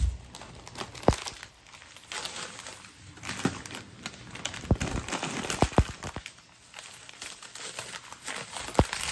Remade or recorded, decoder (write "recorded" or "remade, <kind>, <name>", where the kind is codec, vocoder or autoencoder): recorded